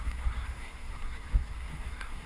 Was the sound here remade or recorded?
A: remade